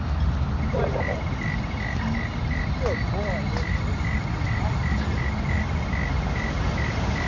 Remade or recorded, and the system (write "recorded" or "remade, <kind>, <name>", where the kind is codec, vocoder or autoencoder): recorded